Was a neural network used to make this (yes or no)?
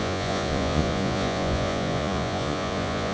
yes